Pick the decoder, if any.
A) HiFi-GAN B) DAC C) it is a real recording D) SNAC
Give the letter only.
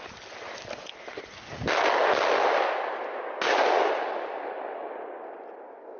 C